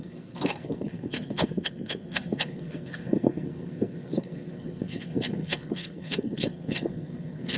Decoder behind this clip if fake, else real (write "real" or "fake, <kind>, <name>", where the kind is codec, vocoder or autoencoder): fake, codec, SNAC